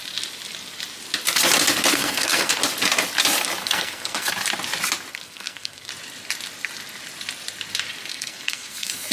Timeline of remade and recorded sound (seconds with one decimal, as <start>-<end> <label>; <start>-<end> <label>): 0.0-1.9 recorded; 1.9-2.6 remade; 2.6-3.6 recorded; 3.6-4.3 remade; 4.3-5.1 recorded; 5.1-5.9 remade; 5.9-8.1 recorded; 8.1-9.1 remade